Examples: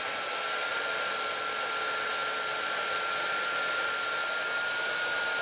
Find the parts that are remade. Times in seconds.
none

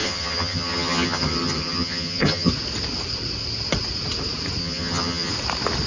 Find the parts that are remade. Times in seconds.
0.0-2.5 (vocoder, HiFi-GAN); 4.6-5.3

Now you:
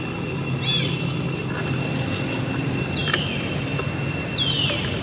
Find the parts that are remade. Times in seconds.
none

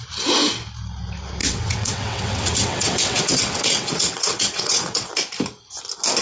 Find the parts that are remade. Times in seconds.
1.4-5.1 (vocoder, WaveNeXt)

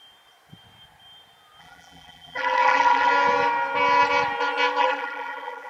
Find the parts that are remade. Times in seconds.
1.6-3.1 (vocoder, BigVGAN v2); 4.8-5.7

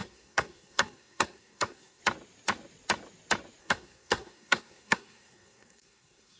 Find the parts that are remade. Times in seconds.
0.0-2.0 (codec, SNAC); 3.6-6.4